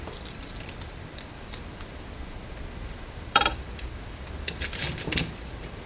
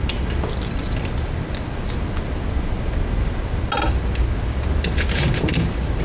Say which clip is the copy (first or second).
first